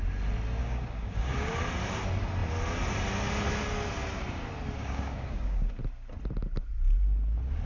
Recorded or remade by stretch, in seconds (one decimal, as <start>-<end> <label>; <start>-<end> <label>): 0.0-0.6 recorded; 0.6-1.6 remade; 1.6-4.8 recorded; 4.8-5.7 remade; 5.7-7.7 recorded